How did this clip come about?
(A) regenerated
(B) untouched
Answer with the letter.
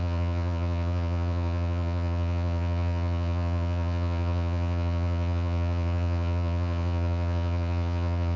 A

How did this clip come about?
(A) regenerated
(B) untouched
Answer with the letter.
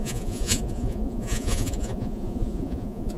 A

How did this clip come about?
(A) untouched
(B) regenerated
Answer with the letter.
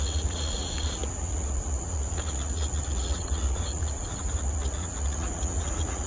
B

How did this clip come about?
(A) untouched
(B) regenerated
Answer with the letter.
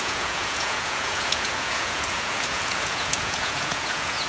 B